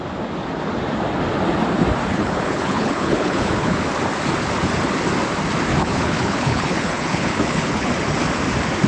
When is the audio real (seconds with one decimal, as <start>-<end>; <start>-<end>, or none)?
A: 0.0-2.1; 3.8-5.7; 7.9-8.9